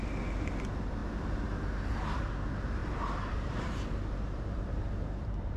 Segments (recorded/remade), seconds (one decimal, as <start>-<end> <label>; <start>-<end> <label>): 0.0-2.8 recorded; 2.8-5.6 remade